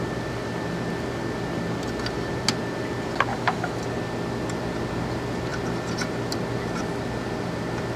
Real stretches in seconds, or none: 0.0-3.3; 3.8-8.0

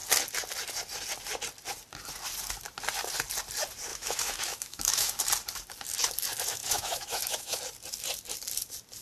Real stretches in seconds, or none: 0.0-3.9; 5.2-6.6; 7.6-9.0

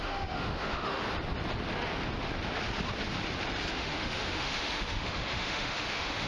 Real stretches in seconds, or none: 1.0-3.7